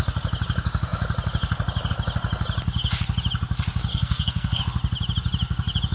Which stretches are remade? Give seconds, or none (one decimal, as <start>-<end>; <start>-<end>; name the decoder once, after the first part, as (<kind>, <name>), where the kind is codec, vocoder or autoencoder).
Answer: 3.9-4.6 (codec, SNAC)